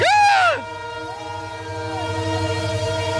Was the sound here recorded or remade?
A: recorded